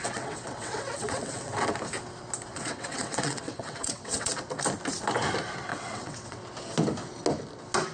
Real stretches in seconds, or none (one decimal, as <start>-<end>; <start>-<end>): 1.5-2.5; 4.3-5.7; 6.4-7.9